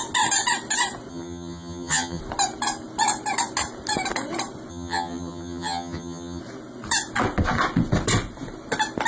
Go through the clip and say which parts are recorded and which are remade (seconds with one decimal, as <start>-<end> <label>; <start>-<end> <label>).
0.0-1.1 recorded; 1.1-2.2 remade; 2.2-4.7 recorded; 4.7-6.4 remade; 6.4-9.1 recorded